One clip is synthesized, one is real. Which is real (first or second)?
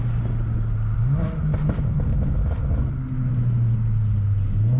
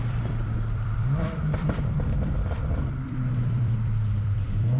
first